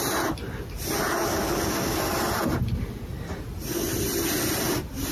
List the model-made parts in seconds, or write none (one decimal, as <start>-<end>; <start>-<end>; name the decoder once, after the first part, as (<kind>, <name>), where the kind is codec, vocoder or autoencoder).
none

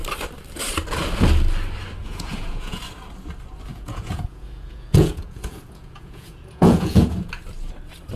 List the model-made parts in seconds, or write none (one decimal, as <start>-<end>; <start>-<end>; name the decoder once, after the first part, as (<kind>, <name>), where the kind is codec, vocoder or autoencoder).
2.0-2.8 (vocoder, Vocos); 3.7-7.3

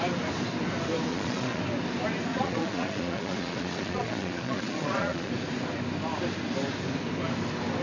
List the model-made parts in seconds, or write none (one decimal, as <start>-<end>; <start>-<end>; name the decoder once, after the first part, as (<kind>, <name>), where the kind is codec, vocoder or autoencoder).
1.1-1.6 (vocoder, Vocos); 2.3-5.3

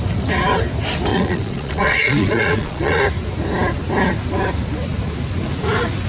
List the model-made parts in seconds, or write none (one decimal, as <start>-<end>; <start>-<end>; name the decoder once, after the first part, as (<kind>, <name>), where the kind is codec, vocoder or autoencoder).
1.1-3.0 (vocoder, Vocos)

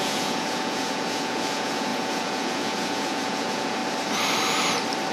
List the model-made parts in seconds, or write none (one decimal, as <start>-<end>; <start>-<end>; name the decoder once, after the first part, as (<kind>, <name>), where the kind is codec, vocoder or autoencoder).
0.0-3.8 (vocoder, Vocos)

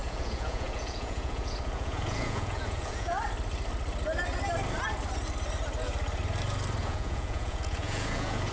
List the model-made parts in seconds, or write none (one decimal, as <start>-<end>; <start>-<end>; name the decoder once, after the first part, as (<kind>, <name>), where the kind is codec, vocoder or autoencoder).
0.0-3.2 (vocoder, Vocos); 6.8-8.5